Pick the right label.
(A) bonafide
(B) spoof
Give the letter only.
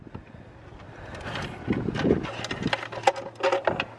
A